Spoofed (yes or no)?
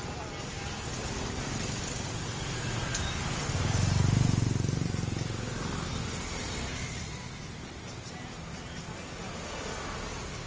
no